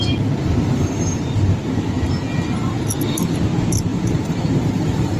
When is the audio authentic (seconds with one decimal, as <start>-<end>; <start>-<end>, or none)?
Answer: 0.0-0.4; 1.2-3.9